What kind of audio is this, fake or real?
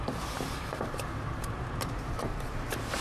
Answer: fake